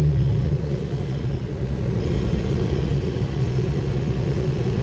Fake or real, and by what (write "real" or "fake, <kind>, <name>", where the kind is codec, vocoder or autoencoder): fake, vocoder, Vocos